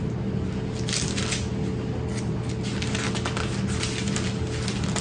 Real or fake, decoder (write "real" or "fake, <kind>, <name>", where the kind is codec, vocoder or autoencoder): real